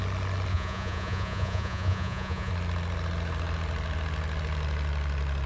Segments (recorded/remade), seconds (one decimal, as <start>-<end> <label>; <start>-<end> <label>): 0.0-0.5 recorded; 0.5-2.5 remade; 2.5-5.5 recorded